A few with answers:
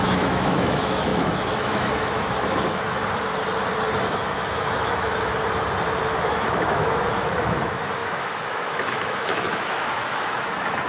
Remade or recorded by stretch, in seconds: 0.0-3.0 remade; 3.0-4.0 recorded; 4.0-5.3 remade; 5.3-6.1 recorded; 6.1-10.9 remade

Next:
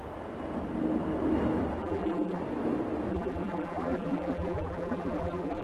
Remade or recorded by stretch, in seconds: 0.0-1.8 recorded; 1.8-2.4 remade; 2.4-3.1 recorded; 3.1-5.6 remade

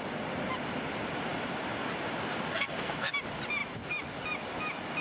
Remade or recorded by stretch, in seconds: 0.0-2.5 recorded; 2.5-3.1 remade; 3.1-5.0 recorded

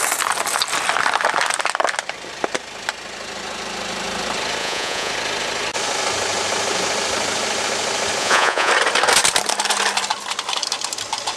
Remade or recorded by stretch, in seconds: 0.0-4.6 recorded; 4.6-5.1 remade; 5.1-8.2 recorded; 8.2-8.7 remade; 8.7-11.4 recorded

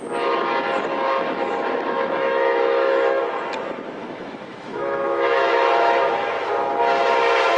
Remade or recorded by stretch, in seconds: 0.0-0.9 recorded; 0.9-3.3 remade; 3.3-4.0 recorded; 4.0-6.3 remade; 6.3-7.6 recorded

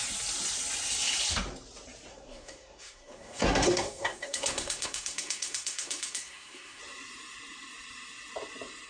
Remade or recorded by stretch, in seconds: 0.0-2.1 recorded; 2.1-6.8 remade; 6.8-8.9 recorded

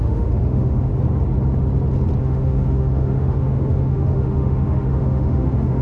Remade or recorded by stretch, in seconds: 0.0-0.9 remade; 0.9-2.2 recorded; 2.2-5.8 remade

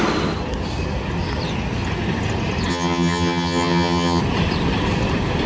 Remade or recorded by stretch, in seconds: 0.0-2.7 recorded; 2.7-4.2 remade; 4.2-5.5 recorded